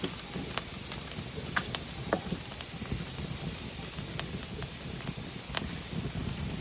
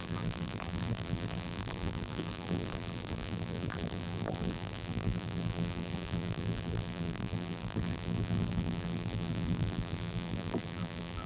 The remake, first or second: second